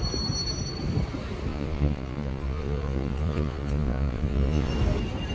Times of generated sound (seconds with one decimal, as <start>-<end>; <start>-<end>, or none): 1.5-4.7